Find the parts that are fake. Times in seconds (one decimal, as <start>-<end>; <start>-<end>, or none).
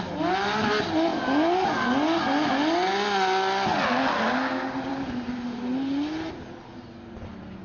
none